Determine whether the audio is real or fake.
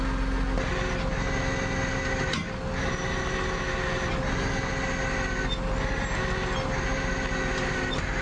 real